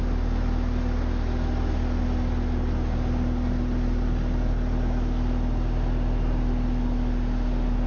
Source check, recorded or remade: recorded